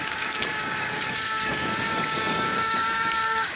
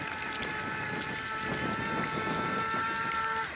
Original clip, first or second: second